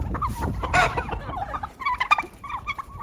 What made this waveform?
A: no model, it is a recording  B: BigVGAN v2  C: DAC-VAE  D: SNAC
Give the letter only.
B